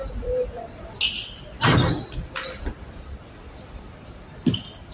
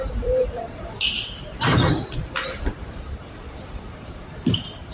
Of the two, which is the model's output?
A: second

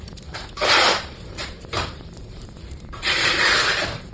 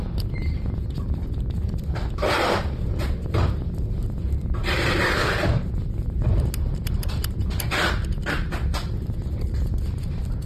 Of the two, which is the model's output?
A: first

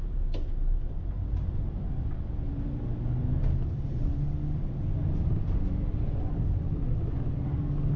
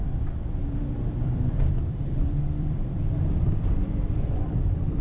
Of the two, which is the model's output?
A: second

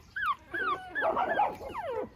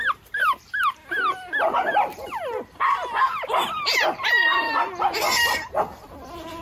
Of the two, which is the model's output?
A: first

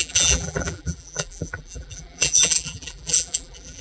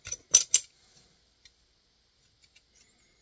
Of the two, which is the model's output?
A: first